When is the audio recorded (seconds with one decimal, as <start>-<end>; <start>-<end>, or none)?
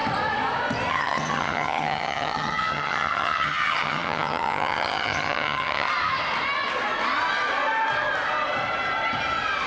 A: 0.0-0.9; 5.9-9.7